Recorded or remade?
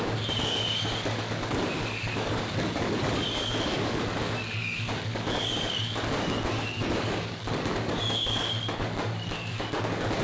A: remade